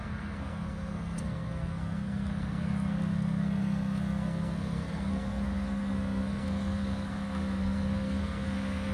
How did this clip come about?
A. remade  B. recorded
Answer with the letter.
A